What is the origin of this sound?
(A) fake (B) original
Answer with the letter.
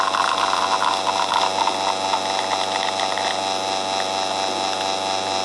B